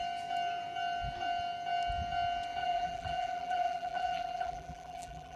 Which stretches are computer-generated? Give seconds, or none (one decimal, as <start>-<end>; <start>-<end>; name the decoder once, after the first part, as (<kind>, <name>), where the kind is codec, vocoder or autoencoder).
2.6-5.4 (vocoder, BigVGAN v2)